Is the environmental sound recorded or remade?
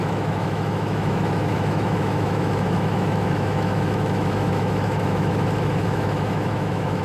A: remade